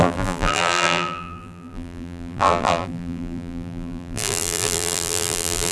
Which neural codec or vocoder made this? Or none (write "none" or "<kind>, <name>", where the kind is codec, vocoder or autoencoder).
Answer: vocoder, BigVGAN v2